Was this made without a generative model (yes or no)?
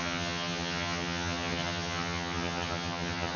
no